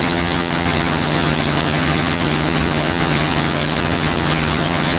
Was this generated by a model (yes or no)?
yes